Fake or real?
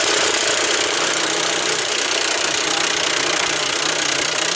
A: real